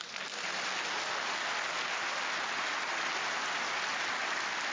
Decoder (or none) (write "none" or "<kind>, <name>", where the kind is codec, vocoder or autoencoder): none